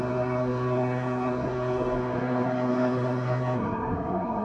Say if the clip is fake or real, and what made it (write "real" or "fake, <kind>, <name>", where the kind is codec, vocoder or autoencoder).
fake, codec, SNAC